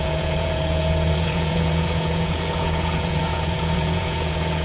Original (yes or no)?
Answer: no